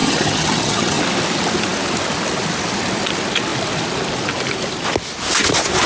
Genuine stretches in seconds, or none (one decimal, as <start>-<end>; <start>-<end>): 1.0-5.9